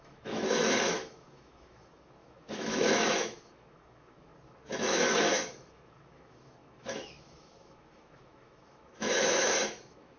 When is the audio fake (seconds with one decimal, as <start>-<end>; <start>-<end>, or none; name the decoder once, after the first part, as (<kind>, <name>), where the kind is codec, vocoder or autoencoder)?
0.0-4.3 (autoencoder, DAC-VAE); 4.9-10.2